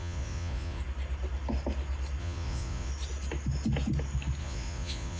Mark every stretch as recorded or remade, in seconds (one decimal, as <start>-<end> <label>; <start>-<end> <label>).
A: 0.0-0.8 remade; 0.8-2.2 recorded; 2.2-2.9 remade; 2.9-4.4 recorded; 4.4-5.2 remade

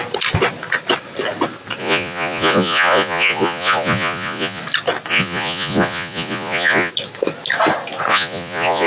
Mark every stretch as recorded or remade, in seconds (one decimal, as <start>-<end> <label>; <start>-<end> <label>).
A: 0.0-1.8 recorded; 1.8-4.6 remade; 4.6-5.1 recorded; 5.1-6.9 remade; 6.9-8.1 recorded; 8.1-8.9 remade

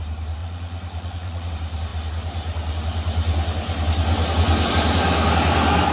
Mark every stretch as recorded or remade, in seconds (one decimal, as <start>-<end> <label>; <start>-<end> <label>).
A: 0.0-0.4 recorded; 0.4-1.5 remade; 1.5-5.9 recorded

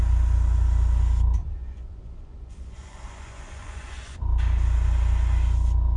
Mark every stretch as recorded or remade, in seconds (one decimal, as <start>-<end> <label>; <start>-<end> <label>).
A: 0.0-1.4 recorded; 1.4-4.2 remade; 4.2-6.0 recorded

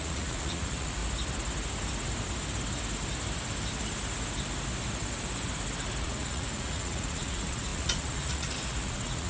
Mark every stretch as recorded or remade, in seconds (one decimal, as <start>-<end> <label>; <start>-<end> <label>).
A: 0.0-1.0 remade; 1.0-6.0 recorded; 6.0-9.3 remade

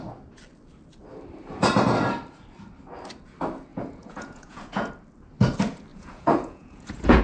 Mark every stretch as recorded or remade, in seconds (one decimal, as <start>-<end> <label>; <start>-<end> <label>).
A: 0.0-3.7 recorded; 3.7-4.9 remade; 4.9-5.9 recorded; 5.9-7.2 remade